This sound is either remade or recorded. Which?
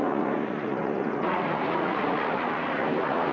remade